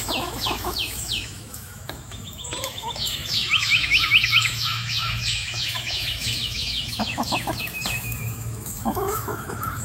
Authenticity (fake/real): fake